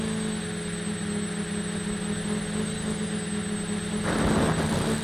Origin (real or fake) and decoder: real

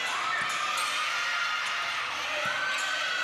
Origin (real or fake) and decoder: real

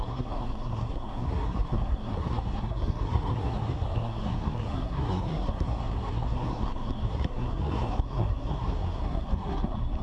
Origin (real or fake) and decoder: fake, codec, SNAC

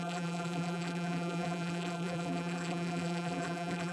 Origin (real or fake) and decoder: fake, vocoder, BigVGAN v2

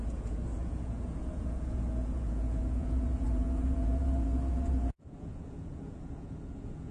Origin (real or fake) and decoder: fake, vocoder, Vocos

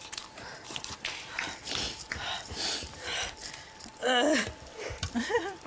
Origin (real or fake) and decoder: fake, vocoder, BigVGAN v2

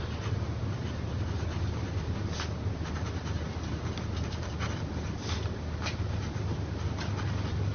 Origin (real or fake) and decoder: real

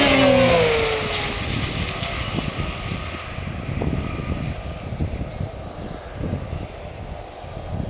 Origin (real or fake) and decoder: real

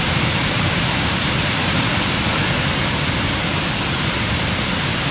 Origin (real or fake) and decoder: real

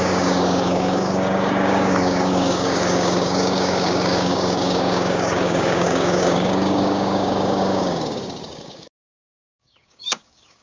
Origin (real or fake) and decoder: fake, codec, DAC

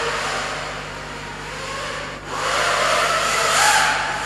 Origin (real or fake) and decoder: real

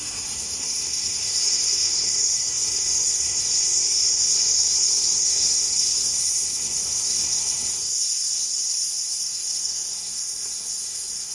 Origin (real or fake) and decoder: fake, codec, SNAC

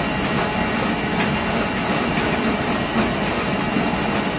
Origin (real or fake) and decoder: real